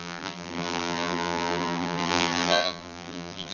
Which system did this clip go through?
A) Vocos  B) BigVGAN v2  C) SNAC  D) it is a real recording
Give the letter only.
B